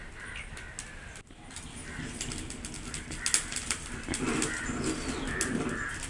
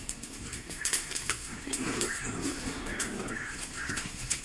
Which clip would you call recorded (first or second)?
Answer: first